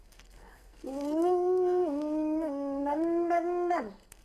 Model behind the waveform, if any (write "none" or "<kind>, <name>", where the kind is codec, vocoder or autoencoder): codec, SNAC